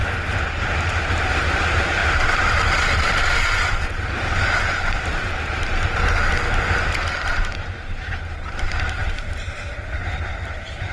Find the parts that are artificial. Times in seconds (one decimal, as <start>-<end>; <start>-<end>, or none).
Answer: 0.5-10.9